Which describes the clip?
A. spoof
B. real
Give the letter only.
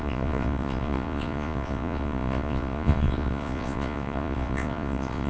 A